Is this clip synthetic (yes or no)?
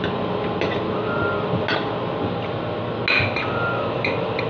no